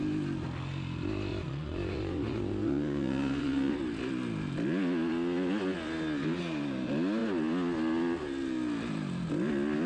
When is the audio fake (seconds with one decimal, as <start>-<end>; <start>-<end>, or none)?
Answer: 1.3-3.7